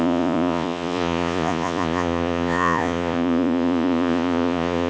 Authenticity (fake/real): fake